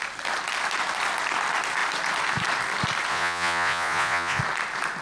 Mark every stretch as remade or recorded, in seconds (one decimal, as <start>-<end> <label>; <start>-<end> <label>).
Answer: 0.0-3.1 recorded; 3.1-4.4 remade; 4.4-5.0 recorded